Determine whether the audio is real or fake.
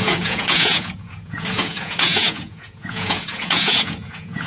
fake